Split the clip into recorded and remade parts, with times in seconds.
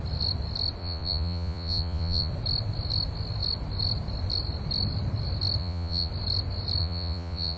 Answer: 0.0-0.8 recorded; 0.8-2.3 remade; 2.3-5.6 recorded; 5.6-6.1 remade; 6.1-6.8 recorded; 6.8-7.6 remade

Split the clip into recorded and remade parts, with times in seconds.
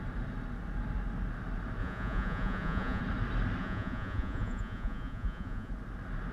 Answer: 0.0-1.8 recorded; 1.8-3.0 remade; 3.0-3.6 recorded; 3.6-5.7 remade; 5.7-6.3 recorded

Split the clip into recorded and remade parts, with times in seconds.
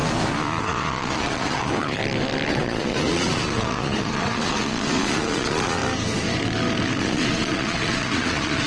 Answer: 0.0-0.6 recorded; 0.6-2.0 remade; 2.0-2.5 recorded; 2.5-5.8 remade; 5.8-7.0 recorded; 7.0-8.7 remade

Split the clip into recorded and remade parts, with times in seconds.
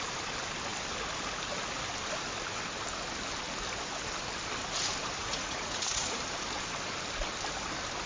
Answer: 0.0-5.2 recorded; 5.2-6.2 remade; 6.2-8.1 recorded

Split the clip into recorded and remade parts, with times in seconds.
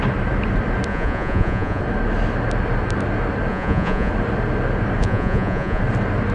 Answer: 0.0-0.9 recorded; 0.9-1.8 remade; 1.8-3.5 recorded; 3.5-4.1 remade; 4.1-5.0 recorded; 5.0-5.8 remade; 5.8-6.3 recorded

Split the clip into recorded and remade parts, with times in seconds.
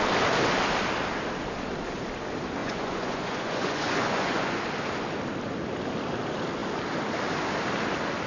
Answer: 0.0-2.6 recorded; 2.6-4.6 remade; 4.6-8.3 recorded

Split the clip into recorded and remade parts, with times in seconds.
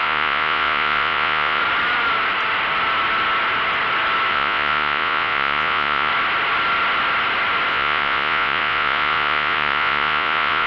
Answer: 0.0-1.6 remade; 1.6-4.3 recorded; 4.3-6.1 remade; 6.1-7.7 recorded; 7.7-10.7 remade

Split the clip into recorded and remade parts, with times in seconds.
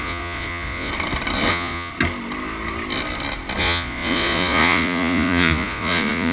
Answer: 0.0-0.9 remade; 0.9-1.5 recorded; 1.5-1.9 remade; 1.9-3.6 recorded; 3.6-6.3 remade